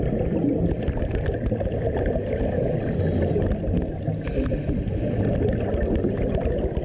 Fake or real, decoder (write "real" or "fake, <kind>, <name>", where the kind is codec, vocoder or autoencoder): real